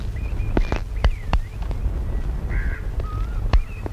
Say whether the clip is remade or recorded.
recorded